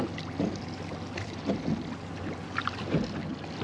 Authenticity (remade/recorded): recorded